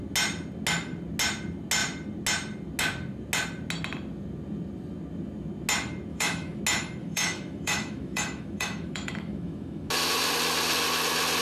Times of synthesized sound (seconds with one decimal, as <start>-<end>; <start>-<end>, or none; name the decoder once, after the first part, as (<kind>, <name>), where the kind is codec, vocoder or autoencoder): 6.1-6.6 (autoencoder, DAC-VAE); 7.0-9.9